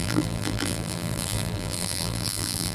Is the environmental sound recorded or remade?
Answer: remade